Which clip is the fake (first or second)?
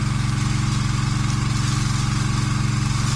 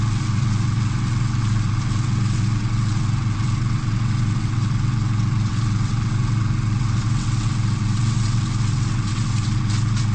second